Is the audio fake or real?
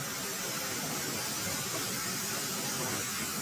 real